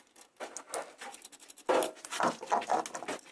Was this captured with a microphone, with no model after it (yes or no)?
yes